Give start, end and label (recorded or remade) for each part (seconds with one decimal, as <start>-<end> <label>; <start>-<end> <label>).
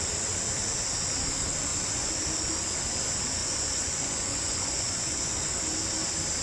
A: 0.0-1.7 recorded; 1.7-2.2 remade; 2.2-3.4 recorded; 3.4-5.4 remade; 5.4-6.4 recorded